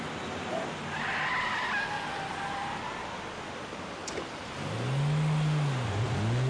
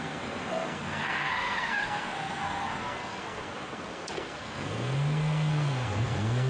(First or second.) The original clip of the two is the first